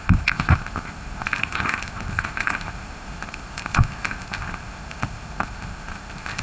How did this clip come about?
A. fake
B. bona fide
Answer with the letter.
A